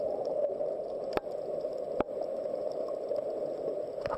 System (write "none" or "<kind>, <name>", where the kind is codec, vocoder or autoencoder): none